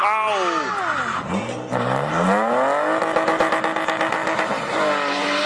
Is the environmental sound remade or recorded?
recorded